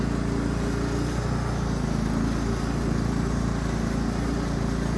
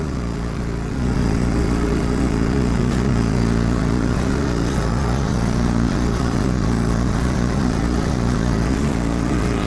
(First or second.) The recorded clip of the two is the first